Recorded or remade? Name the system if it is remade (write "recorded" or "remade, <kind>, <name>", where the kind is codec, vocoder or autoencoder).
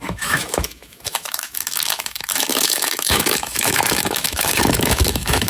remade, autoencoder, DAC-VAE